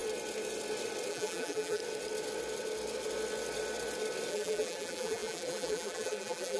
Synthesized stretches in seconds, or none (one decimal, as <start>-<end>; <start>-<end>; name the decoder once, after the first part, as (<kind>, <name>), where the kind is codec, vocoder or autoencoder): 1.1-1.8 (vocoder, BigVGAN v2); 4.3-6.6